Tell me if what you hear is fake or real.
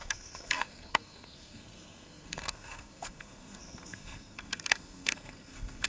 fake